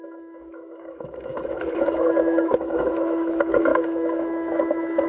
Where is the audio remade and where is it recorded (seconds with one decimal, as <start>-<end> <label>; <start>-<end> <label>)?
0.0-5.1 remade